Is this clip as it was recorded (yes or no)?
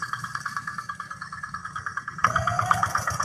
no